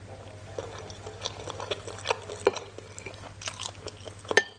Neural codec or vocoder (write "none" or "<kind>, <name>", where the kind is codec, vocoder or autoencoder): none